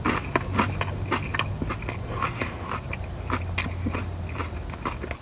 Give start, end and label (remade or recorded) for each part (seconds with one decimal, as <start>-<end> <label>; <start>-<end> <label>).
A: 0.0-5.2 recorded